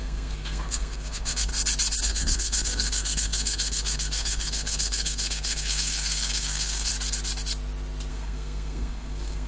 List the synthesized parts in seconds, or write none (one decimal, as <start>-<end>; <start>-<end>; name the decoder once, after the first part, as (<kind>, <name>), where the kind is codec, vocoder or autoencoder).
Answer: 0.0-1.5 (codec, SNAC); 2.0-6.9; 8.1-9.5